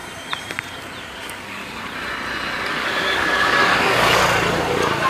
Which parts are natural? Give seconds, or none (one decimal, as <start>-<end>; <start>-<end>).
0.0-1.0; 1.6-2.7; 4.2-5.1